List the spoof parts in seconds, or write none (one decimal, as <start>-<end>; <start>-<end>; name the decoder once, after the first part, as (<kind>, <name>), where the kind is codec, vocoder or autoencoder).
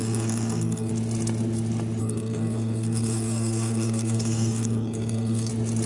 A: 0.0-0.9 (codec, SNAC); 2.0-5.5